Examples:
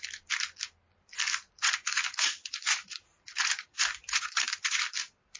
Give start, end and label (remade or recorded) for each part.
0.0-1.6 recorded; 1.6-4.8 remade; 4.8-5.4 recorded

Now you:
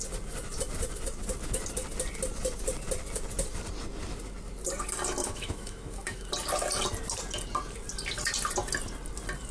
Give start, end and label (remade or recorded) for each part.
0.0-5.2 recorded; 5.2-6.3 remade; 6.3-9.5 recorded

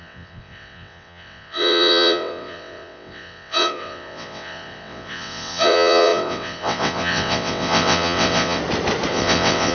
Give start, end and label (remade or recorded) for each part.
0.0-8.6 remade; 8.6-9.1 recorded; 9.1-9.7 remade

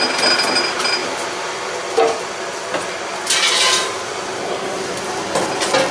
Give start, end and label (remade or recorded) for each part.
0.0-5.9 recorded